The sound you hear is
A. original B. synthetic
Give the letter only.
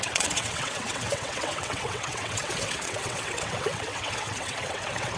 B